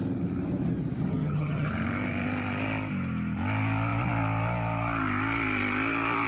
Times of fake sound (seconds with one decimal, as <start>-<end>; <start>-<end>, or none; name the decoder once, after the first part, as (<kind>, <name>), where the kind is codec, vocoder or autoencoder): 1.1-1.7 (vocoder, HiFi-GAN)